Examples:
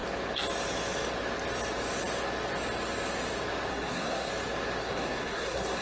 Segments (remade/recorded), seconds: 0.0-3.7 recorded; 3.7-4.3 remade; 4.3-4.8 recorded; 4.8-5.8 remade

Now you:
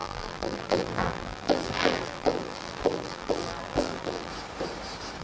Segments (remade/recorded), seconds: 0.0-4.3 remade; 4.3-5.2 recorded

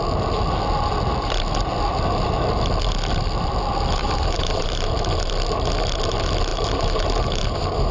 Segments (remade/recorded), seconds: 0.0-4.0 recorded; 4.0-4.9 remade; 4.9-6.5 recorded; 6.5-7.9 remade

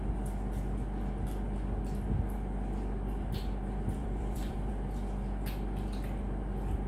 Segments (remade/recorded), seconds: 0.0-4.0 recorded; 4.0-4.7 remade; 4.7-6.9 recorded